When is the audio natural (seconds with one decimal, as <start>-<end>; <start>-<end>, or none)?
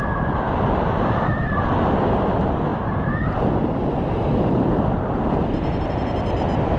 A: 0.0-6.8